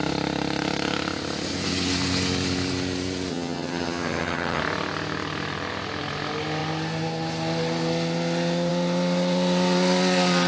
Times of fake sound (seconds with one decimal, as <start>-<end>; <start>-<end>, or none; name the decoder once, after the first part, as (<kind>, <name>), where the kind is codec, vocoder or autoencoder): 3.3-4.6 (vocoder, HiFi-GAN)